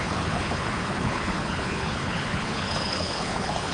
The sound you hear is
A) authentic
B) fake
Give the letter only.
B